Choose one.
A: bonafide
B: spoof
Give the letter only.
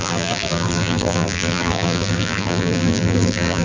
B